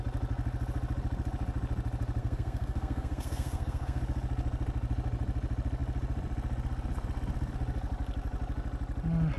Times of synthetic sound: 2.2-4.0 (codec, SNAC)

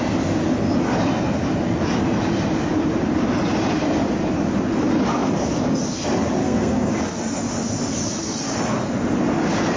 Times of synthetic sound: 6.4-6.9 (codec, SNAC)

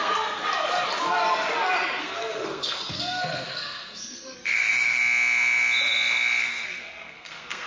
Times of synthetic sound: 0.0-0.4 (codec, SNAC); 2.0-5.0; 6.4-7.7